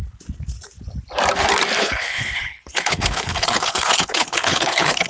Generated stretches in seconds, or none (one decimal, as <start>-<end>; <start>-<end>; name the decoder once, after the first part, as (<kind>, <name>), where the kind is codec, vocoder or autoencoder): 1.8-5.1 (codec, HILCodec)